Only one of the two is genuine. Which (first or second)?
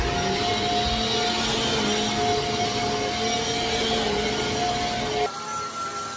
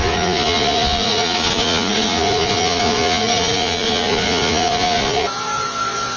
first